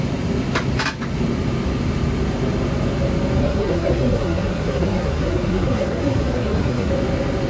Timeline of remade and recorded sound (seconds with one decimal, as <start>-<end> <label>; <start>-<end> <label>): 0.0-3.4 recorded; 3.4-6.9 remade; 6.9-7.5 recorded